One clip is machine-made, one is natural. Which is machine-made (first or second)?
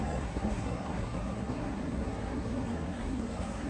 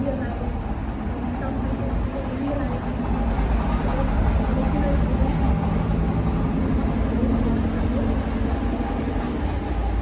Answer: first